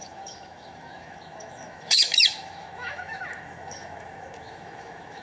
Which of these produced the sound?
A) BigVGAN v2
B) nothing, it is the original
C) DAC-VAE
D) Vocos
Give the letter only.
C